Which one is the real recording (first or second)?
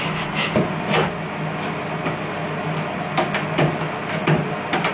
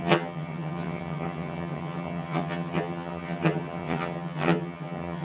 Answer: first